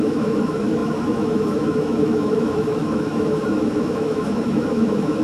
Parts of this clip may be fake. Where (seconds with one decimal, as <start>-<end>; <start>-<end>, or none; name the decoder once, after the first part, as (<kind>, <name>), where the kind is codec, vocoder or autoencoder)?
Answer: 0.0-5.2 (autoencoder, DAC-VAE)